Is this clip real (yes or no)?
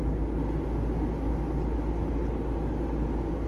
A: yes